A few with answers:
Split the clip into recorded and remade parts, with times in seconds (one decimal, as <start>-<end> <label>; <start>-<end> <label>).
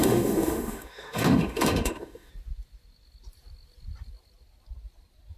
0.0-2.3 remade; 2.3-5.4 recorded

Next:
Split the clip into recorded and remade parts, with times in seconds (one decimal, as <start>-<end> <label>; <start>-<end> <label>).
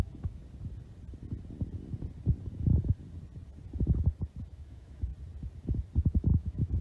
0.0-0.4 remade; 0.4-4.5 recorded; 4.5-5.1 remade; 5.1-6.0 recorded; 6.0-6.8 remade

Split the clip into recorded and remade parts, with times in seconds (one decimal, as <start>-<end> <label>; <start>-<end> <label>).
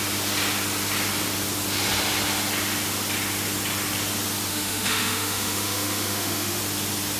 0.0-4.5 recorded; 4.5-6.6 remade; 6.6-7.2 recorded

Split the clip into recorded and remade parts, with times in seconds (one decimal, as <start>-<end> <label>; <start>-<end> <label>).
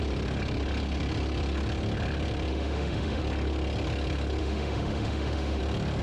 0.0-2.5 recorded; 2.5-3.2 remade; 3.2-4.4 recorded; 4.4-5.6 remade; 5.6-6.0 recorded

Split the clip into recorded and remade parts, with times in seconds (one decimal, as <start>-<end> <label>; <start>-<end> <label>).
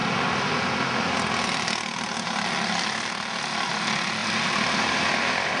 0.0-5.6 recorded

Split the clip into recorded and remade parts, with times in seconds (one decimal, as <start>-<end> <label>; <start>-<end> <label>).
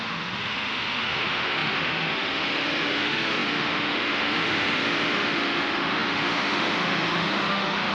0.0-7.9 remade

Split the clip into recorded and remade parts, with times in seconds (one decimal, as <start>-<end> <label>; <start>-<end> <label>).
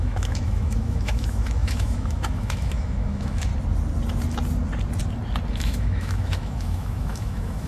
0.0-3.5 remade; 3.5-5.5 recorded; 5.5-7.7 remade